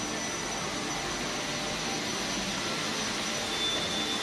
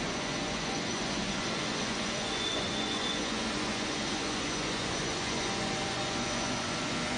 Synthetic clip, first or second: second